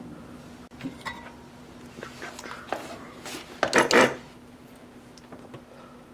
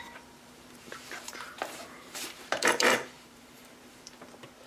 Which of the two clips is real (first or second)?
first